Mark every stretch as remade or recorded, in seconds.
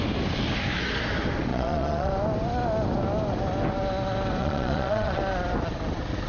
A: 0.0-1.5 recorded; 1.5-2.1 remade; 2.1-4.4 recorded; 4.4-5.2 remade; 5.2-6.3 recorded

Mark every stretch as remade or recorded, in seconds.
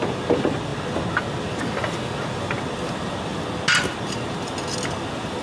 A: 0.0-5.4 recorded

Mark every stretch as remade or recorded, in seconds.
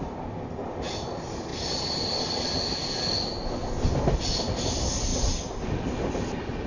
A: 0.0-6.7 recorded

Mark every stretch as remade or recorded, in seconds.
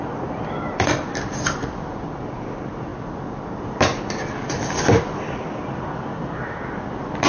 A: 0.0-7.3 recorded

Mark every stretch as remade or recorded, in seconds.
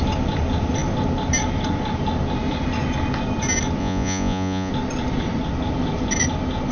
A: 0.0-3.8 recorded; 3.8-4.7 remade; 4.7-6.7 recorded